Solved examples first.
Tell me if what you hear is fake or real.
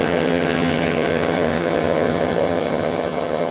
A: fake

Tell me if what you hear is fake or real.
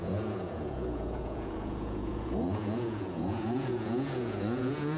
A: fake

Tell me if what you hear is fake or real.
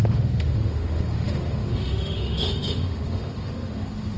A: fake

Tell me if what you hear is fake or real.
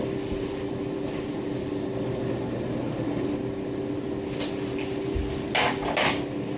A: real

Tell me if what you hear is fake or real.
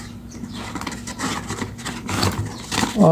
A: real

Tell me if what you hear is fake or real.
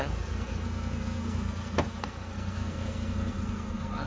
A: fake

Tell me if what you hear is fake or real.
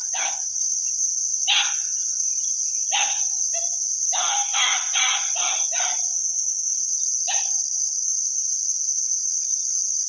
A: fake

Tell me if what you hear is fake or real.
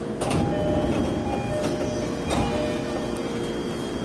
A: real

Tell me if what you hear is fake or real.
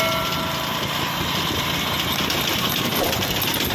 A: real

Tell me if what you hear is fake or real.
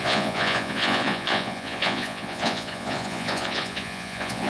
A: fake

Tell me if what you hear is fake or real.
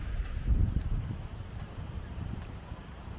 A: fake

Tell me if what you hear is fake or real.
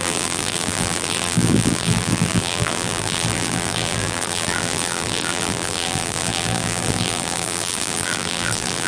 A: fake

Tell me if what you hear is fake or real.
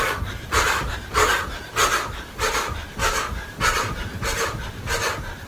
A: real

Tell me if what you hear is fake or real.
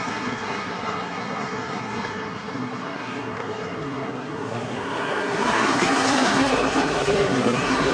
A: fake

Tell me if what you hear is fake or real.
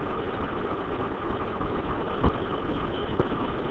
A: real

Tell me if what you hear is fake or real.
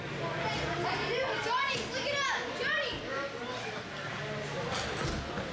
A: real